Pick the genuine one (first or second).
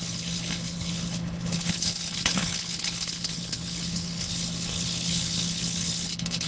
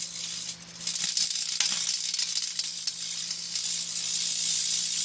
second